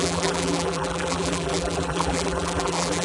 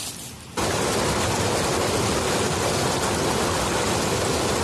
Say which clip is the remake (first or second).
first